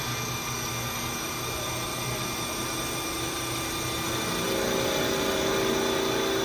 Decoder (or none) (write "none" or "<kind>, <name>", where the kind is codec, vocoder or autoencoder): none